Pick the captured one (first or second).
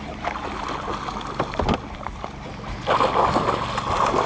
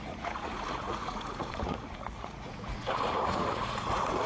first